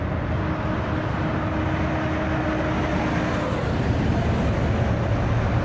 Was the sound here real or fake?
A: real